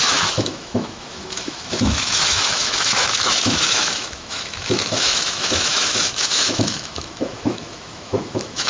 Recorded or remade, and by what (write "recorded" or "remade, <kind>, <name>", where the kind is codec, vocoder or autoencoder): remade, autoencoder, DAC-VAE